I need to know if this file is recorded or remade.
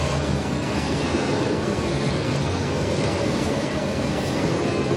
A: remade